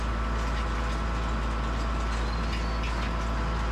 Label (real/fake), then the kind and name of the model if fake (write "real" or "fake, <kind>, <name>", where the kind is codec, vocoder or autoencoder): real